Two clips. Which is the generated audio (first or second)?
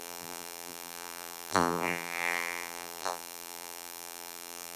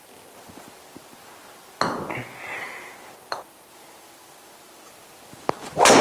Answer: first